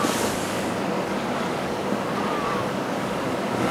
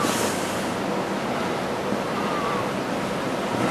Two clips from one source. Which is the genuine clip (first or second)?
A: second